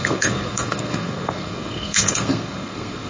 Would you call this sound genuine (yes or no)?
no